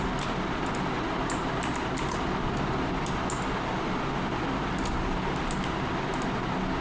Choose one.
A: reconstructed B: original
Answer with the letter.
B